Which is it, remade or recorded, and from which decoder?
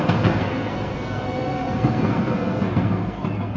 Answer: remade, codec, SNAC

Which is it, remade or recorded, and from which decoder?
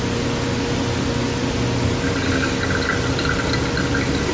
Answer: recorded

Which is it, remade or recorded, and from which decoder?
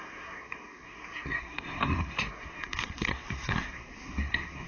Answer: remade, codec, SNAC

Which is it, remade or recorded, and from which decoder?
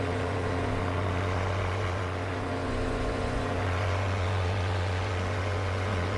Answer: remade, vocoder, Vocos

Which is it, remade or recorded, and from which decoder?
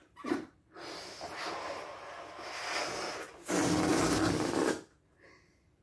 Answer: recorded